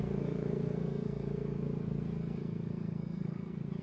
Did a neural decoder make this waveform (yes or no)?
yes